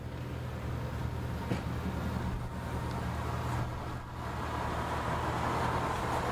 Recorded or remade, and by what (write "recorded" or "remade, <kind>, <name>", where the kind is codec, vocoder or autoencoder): recorded